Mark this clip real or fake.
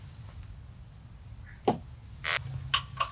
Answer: real